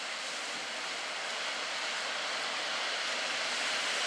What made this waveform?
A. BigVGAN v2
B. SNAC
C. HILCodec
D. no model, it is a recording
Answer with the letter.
D